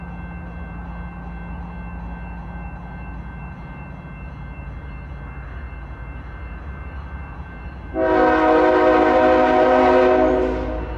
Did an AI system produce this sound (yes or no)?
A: no